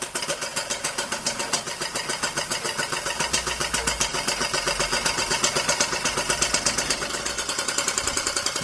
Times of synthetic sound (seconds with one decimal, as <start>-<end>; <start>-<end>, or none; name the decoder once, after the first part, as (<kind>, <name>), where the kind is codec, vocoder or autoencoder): 0.5-1.4 (vocoder, Vocos)